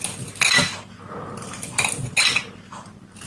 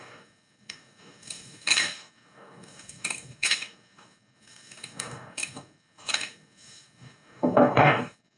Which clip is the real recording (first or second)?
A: first